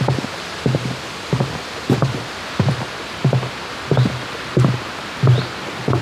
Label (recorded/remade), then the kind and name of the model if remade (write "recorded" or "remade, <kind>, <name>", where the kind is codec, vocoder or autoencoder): recorded